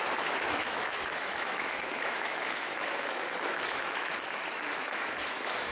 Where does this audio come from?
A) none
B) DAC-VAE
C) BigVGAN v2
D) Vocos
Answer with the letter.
B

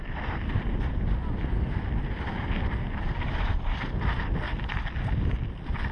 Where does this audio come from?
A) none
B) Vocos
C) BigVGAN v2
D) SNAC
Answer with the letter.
A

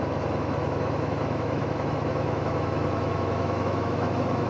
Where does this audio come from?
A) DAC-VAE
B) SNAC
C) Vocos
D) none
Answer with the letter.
A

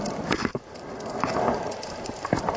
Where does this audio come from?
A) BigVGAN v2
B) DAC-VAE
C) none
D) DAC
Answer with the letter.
A